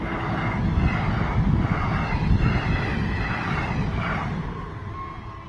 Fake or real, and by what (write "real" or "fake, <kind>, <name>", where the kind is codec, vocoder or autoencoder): real